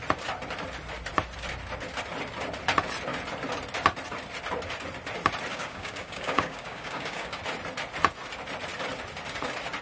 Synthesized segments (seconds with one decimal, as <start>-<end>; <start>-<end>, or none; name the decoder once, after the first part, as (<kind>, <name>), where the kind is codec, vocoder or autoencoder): 5.5-7.4 (codec, DAC)